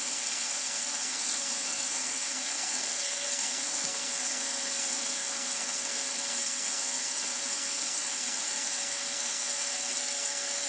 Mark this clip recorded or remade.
remade